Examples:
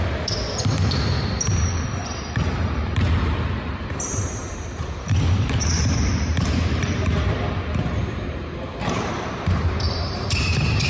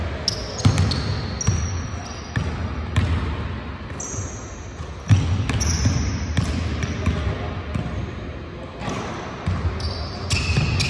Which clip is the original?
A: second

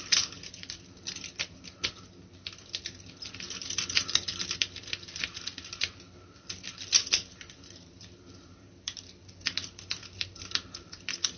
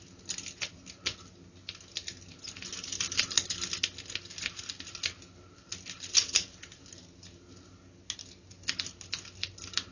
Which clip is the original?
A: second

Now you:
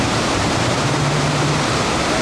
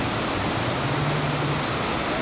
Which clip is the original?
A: second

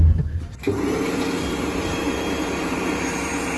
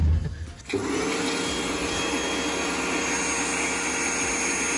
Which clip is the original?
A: second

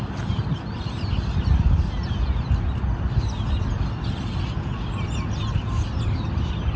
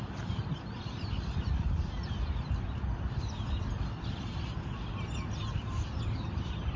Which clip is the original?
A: first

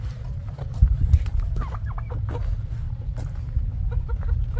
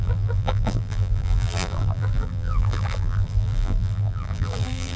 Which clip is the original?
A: first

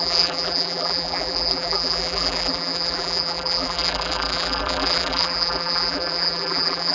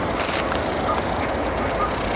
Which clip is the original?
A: second